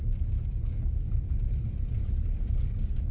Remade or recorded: recorded